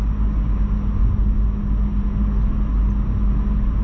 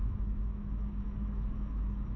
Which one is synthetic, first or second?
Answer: second